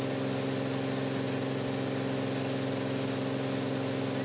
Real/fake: real